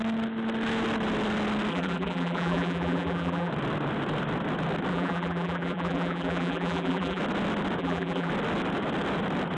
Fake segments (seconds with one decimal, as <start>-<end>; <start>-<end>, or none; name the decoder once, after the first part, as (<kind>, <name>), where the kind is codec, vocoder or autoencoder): 1.7-3.5 (vocoder, BigVGAN v2); 4.9-7.2; 7.8-8.3